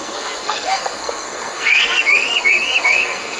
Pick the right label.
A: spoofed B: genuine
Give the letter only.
A